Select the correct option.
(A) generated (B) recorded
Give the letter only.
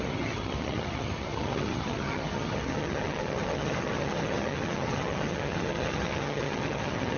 A